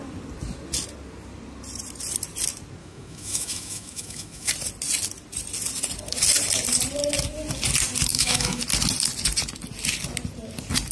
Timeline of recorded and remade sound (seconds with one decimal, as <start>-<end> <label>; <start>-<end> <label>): 0.0-2.8 recorded; 2.8-4.5 remade; 4.5-8.1 recorded; 8.1-8.6 remade; 8.6-10.9 recorded